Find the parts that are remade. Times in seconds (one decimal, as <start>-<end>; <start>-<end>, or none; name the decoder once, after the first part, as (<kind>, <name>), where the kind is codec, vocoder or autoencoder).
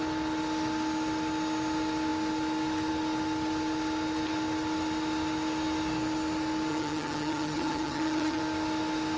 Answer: 6.7-8.4 (vocoder, HiFi-GAN)